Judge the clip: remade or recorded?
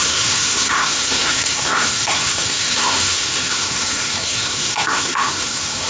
remade